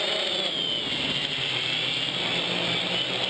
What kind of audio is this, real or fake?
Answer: real